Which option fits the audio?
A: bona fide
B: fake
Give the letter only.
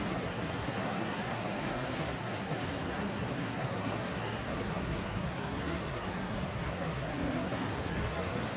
B